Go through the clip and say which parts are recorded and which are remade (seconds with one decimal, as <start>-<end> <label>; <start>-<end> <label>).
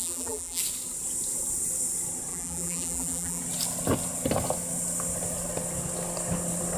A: 0.0-0.6 remade; 0.6-2.3 recorded; 2.3-3.4 remade; 3.4-6.8 recorded